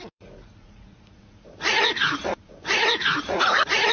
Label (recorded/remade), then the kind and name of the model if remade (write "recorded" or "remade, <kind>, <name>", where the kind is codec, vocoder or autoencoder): remade, vocoder, Vocos